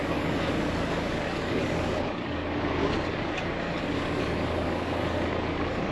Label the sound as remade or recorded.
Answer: remade